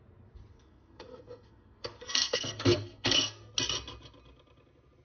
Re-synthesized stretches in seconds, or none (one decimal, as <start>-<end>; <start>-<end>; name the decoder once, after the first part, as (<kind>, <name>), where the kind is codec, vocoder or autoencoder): 0.5-3.5 (codec, SNAC)